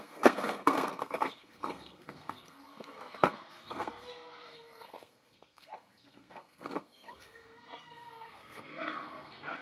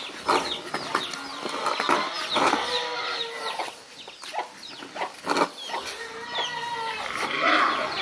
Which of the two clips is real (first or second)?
second